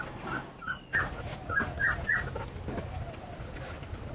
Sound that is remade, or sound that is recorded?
recorded